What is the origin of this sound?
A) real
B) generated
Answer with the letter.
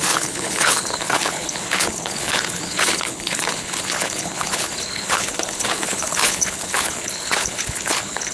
B